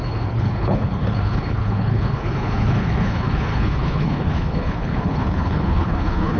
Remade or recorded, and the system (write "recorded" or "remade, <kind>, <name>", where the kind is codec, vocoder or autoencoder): remade, codec, HILCodec